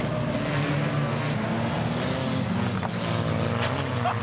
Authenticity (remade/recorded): recorded